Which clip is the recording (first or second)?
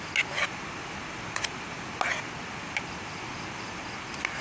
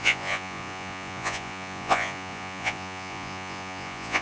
first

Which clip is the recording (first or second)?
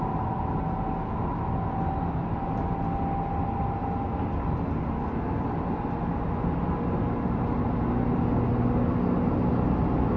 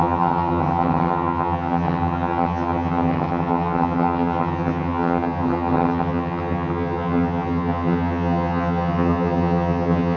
first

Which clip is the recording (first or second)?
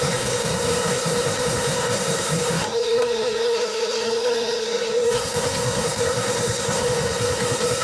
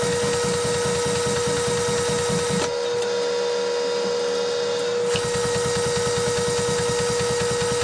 second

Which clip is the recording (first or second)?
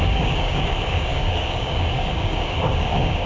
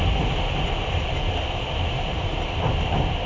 second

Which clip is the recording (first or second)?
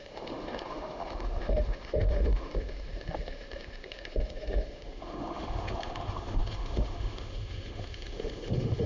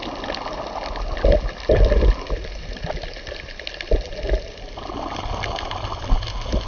second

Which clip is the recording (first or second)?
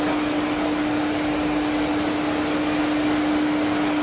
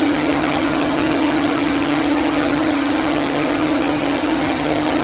first